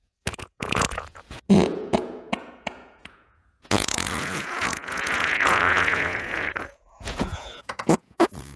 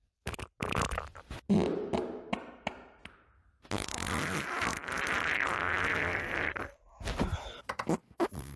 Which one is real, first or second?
second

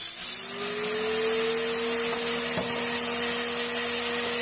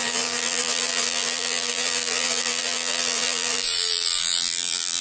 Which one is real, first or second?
first